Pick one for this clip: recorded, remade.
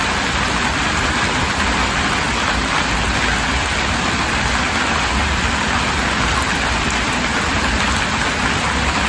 recorded